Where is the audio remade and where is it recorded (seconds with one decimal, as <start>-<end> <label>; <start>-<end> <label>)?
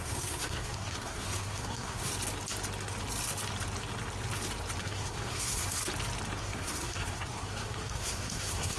0.0-2.1 remade; 2.1-4.8 recorded; 4.8-5.8 remade; 5.8-6.4 recorded; 6.4-8.8 remade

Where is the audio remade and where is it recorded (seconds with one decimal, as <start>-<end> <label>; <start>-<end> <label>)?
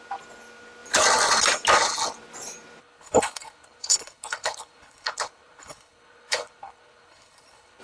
0.0-2.8 recorded; 2.8-7.8 remade